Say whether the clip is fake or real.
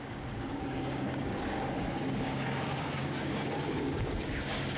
fake